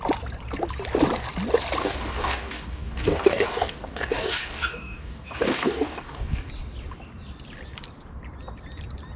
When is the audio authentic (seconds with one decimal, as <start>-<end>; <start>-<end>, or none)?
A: 0.0-1.8; 6.5-9.2